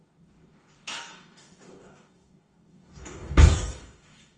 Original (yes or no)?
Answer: no